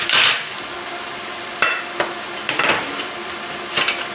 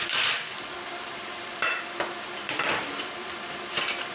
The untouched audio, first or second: first